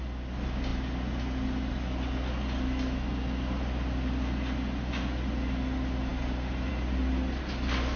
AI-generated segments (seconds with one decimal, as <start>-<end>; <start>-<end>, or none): none